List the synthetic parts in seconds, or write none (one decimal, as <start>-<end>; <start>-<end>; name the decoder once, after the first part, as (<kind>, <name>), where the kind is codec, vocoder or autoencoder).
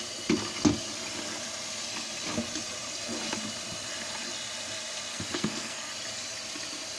5.1-5.9 (codec, SNAC)